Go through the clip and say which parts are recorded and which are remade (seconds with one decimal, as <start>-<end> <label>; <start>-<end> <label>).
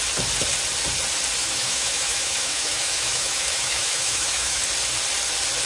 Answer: 0.0-1.4 recorded; 1.4-4.6 remade; 4.6-5.7 recorded